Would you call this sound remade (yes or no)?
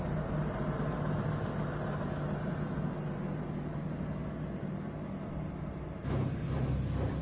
no